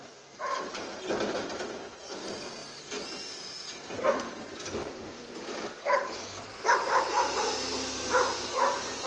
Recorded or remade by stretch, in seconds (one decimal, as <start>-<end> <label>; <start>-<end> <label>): 0.0-9.1 recorded